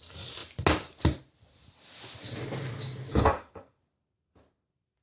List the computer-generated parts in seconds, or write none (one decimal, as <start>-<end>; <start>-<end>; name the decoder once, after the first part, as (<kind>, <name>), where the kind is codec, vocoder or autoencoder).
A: 3.1-3.8 (codec, SNAC)